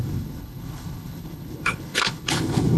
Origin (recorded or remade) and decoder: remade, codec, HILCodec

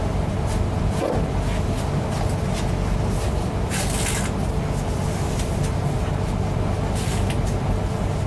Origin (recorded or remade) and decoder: recorded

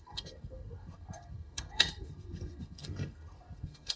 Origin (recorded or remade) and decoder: remade, codec, SNAC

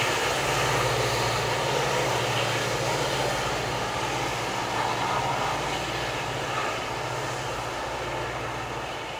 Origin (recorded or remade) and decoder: recorded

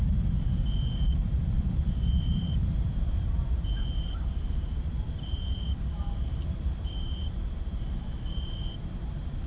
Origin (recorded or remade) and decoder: remade, vocoder, BigVGAN v2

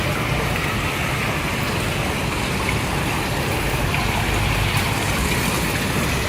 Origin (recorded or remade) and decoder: recorded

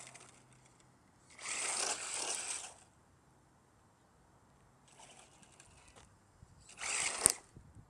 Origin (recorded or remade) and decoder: recorded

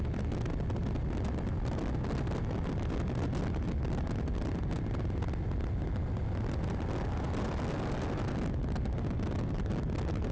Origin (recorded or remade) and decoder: recorded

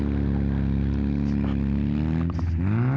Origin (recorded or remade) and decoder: recorded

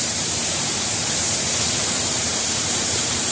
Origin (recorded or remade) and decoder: remade, vocoder, BigVGAN v2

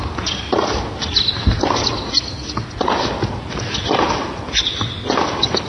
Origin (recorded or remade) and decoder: recorded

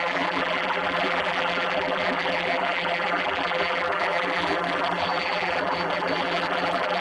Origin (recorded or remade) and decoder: remade, vocoder, BigVGAN v2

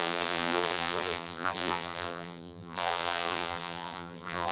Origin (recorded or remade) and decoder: remade, vocoder, BigVGAN v2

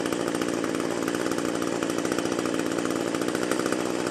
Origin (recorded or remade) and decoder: remade, vocoder, BigVGAN v2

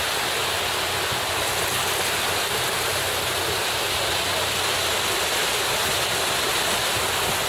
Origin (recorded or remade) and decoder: recorded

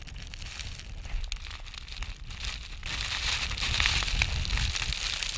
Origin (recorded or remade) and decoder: recorded